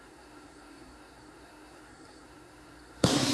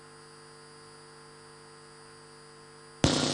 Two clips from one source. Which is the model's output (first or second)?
first